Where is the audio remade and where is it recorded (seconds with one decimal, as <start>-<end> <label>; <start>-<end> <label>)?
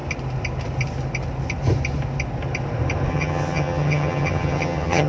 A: 0.0-3.1 recorded; 3.1-5.1 remade